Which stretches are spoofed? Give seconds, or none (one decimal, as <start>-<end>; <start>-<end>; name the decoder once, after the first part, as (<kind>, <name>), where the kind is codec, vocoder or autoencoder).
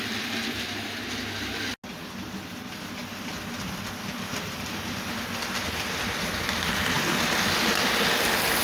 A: 6.3-7.9 (vocoder, BigVGAN v2)